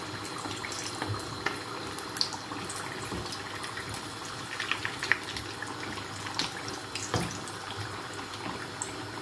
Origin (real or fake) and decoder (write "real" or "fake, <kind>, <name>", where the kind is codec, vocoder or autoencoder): real